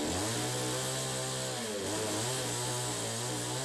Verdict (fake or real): real